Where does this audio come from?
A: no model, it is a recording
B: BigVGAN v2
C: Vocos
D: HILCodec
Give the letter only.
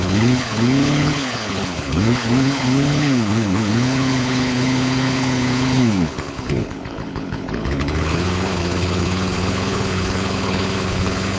D